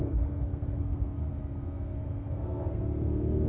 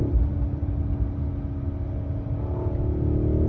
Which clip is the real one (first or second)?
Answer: second